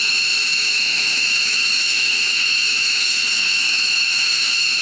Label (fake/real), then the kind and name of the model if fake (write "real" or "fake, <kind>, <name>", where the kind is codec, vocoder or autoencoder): fake, autoencoder, DAC-VAE